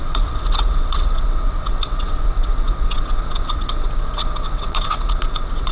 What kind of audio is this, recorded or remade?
remade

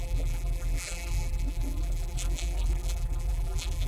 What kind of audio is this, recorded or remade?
remade